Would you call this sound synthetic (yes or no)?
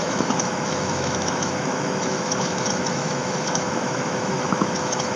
yes